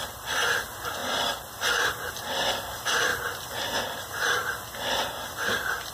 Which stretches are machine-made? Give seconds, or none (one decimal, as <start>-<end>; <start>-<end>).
0.0-3.1; 5.5-5.9